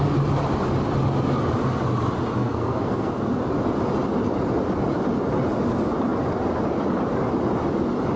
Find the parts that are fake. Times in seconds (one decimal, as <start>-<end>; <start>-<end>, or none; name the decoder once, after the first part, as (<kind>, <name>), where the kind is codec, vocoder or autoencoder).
2.4-3.1 (codec, SNAC)